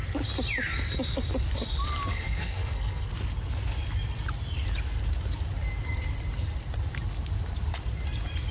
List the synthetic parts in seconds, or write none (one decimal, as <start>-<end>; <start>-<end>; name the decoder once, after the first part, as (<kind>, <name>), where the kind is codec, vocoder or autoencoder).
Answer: 2.1-3.1 (codec, SNAC)